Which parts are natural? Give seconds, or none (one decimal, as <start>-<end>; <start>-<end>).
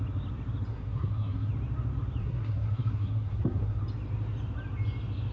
0.0-0.7; 1.5-2.2; 3.8-5.3